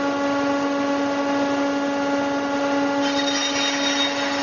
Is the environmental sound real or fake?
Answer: real